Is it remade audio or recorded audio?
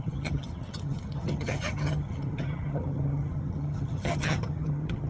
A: remade